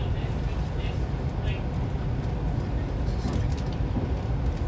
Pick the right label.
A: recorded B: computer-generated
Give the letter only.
A